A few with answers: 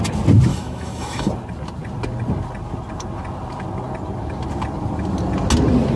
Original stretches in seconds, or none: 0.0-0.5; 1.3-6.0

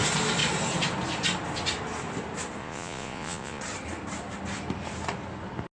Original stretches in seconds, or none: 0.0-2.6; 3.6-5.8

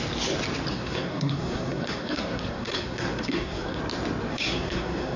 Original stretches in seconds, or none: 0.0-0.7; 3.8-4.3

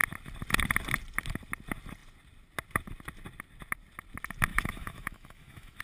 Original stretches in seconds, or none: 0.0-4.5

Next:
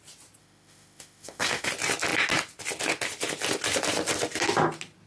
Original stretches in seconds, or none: 0.0-0.4; 1.7-5.1

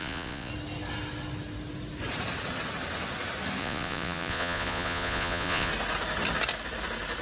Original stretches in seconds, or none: 0.5-3.6; 5.7-7.2

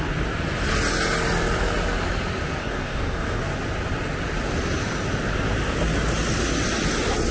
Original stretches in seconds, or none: 0.0-2.6; 3.4-7.3

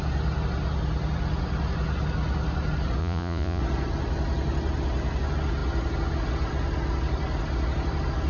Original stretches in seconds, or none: 0.0-3.0; 3.6-8.3